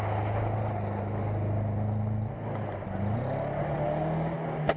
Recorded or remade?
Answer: recorded